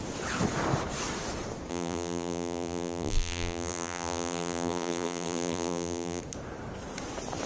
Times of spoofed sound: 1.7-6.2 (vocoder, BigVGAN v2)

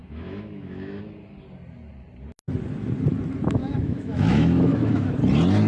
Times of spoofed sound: 0.0-1.0 (autoencoder, DAC-VAE); 3.6-5.1

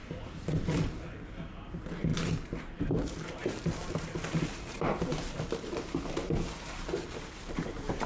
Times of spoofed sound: 0.9-8.1 (vocoder, BigVGAN v2)

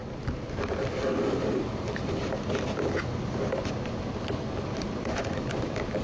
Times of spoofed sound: 1.4-2.2 (vocoder, BigVGAN v2); 5.3-6.0

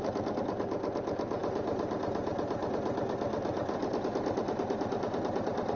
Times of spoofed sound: 1.4-2.7 (vocoder, BigVGAN v2)

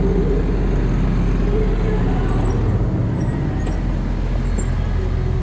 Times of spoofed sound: none